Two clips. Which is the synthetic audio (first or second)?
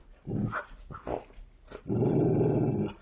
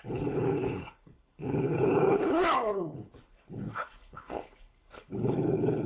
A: second